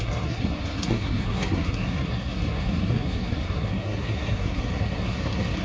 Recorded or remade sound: remade